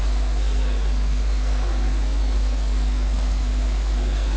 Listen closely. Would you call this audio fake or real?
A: fake